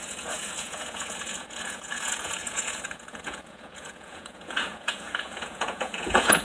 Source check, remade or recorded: remade